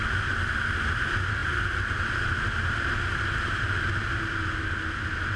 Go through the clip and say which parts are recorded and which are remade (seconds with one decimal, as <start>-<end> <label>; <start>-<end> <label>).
0.0-5.4 recorded